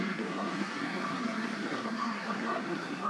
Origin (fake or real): fake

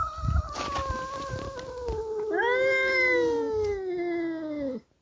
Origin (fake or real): real